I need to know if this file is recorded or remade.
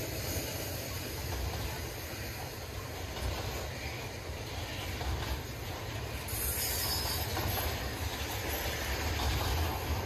recorded